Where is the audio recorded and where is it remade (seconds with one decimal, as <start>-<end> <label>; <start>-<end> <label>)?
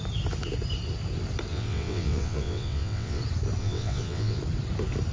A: 0.0-1.5 recorded; 1.5-3.2 remade; 3.2-3.6 recorded; 3.6-4.4 remade; 4.4-5.1 recorded